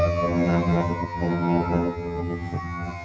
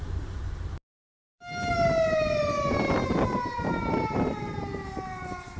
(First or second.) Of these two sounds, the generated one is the first